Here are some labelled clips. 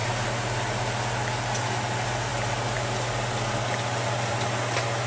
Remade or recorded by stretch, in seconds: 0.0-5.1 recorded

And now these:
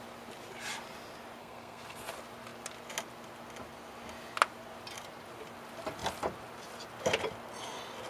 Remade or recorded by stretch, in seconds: 0.0-1.4 recorded; 1.4-2.1 remade; 2.1-8.1 recorded

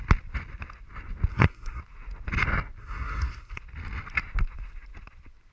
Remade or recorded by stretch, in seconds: 0.0-1.3 recorded; 1.3-1.8 remade; 1.8-2.8 recorded; 2.8-3.6 remade; 3.6-5.5 recorded

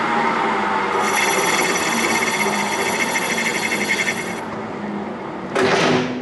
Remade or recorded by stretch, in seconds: 0.0-6.2 recorded

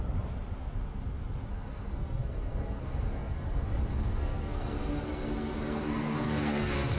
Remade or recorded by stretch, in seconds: 0.0-1.5 recorded; 1.5-7.0 remade